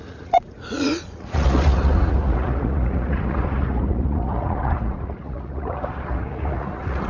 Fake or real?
fake